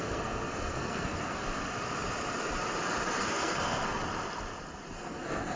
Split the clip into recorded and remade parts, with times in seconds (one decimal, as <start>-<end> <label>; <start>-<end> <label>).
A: 0.0-1.4 remade; 1.4-3.2 recorded; 3.2-4.0 remade; 4.0-4.9 recorded; 4.9-5.6 remade